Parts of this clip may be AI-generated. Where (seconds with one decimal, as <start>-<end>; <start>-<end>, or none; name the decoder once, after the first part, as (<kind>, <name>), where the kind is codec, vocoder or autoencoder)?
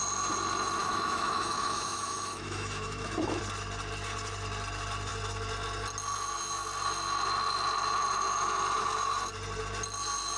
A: 0.8-3.4 (autoencoder, DAC-VAE)